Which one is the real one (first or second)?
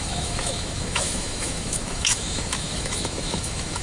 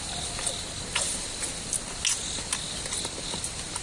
second